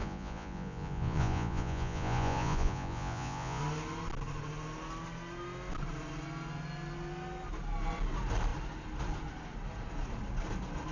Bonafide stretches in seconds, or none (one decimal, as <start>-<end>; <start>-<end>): 3.6-10.9